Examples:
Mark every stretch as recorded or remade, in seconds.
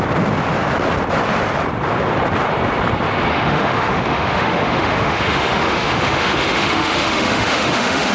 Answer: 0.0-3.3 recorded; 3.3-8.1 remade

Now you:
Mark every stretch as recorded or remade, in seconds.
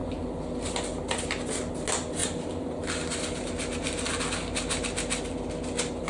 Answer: 0.0-6.1 recorded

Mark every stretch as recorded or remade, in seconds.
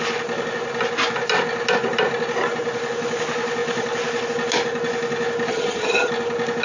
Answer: 0.0-5.5 recorded; 5.5-6.1 remade; 6.1-6.6 recorded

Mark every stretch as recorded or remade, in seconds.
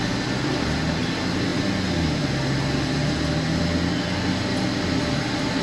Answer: 0.0-5.6 recorded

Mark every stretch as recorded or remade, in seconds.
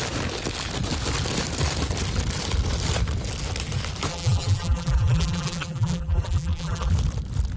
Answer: 0.0-4.1 recorded; 4.1-6.9 remade; 6.9-7.6 recorded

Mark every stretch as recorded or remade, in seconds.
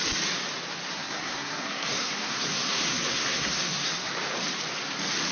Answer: 0.0-0.9 recorded; 0.9-4.1 remade; 4.1-5.3 recorded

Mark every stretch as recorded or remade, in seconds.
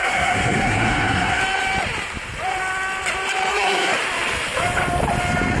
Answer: 0.0-1.4 remade; 1.4-3.5 recorded; 3.5-3.9 remade; 3.9-5.6 recorded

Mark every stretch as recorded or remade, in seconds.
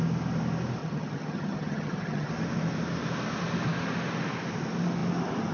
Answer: 0.0-0.8 recorded; 0.8-2.3 remade; 2.3-5.5 recorded